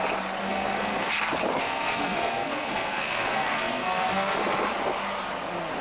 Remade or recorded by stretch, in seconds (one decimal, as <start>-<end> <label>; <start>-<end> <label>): 0.0-0.4 recorded; 0.4-1.1 remade; 1.1-1.6 recorded; 1.6-4.4 remade; 4.4-5.8 recorded